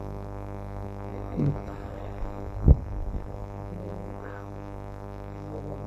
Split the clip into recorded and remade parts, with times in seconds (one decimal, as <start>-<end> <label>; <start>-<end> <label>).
0.0-5.9 remade